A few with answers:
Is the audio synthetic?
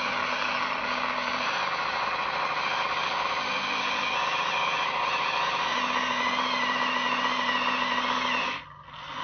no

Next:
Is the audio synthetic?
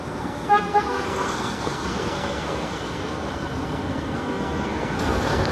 yes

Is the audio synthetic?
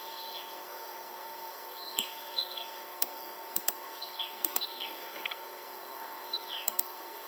yes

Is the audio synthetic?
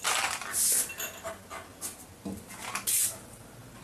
no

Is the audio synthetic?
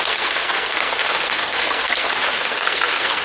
yes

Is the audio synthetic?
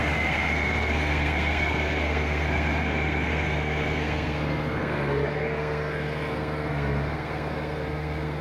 yes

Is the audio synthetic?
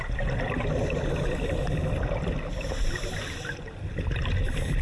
no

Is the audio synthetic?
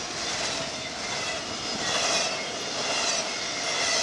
no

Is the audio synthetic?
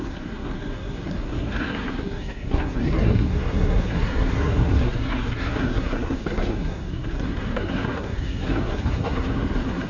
yes